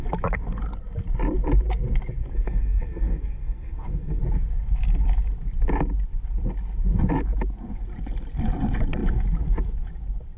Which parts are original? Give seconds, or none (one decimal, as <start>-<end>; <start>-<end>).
0.0-2.2; 4.2-10.4